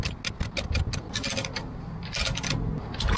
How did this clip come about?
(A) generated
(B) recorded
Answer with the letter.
B